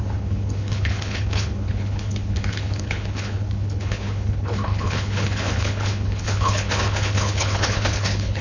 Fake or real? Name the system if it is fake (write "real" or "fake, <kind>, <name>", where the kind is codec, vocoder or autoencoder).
fake, codec, HILCodec